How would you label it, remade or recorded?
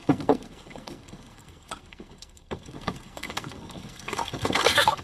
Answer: remade